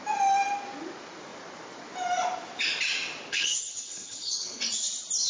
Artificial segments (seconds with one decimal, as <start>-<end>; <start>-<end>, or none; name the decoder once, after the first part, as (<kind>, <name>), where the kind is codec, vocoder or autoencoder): 3.3-4.6 (codec, HILCodec)